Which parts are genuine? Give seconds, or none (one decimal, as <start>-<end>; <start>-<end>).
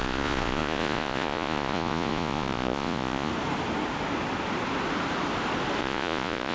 3.3-5.8